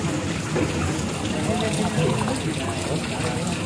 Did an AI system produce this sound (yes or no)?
no